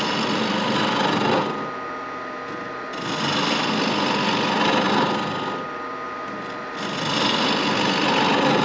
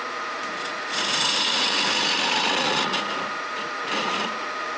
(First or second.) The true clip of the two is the first